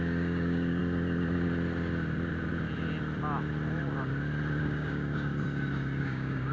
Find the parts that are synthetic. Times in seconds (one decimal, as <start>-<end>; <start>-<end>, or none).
0.0-0.8; 4.6-5.3; 6.0-6.5